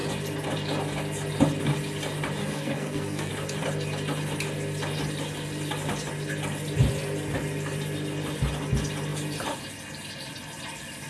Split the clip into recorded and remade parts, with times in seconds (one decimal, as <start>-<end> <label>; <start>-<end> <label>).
0.0-2.4 recorded; 2.4-3.3 remade; 3.3-11.1 recorded